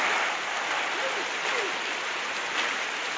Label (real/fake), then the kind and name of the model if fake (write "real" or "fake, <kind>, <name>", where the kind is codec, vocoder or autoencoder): real